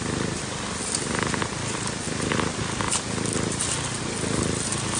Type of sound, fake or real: real